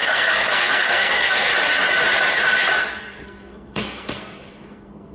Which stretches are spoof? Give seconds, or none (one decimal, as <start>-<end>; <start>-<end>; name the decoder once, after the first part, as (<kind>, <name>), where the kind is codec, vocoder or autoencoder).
0.0-1.5 (codec, SNAC); 2.8-5.1